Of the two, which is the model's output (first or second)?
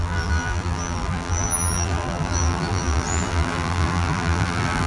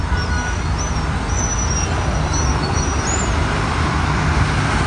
first